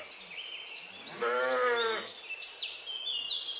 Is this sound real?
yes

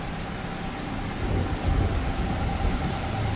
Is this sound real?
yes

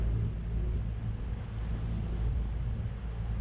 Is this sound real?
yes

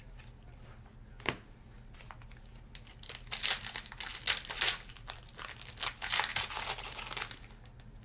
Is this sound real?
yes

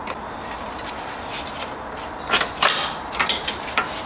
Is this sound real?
yes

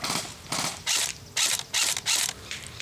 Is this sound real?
yes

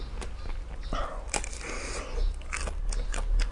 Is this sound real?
yes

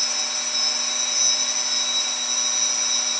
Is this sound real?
yes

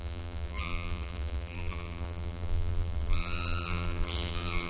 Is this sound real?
no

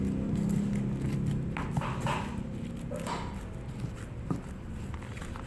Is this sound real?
yes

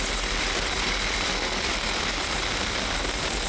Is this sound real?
yes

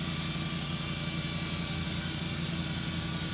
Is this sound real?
yes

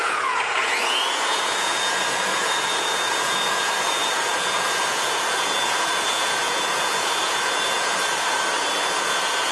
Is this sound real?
no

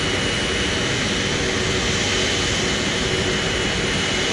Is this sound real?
yes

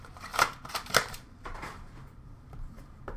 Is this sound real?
no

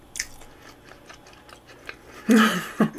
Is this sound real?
yes